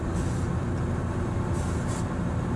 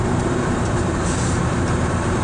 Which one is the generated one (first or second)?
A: second